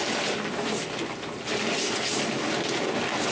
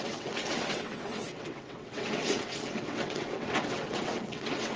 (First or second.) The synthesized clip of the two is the second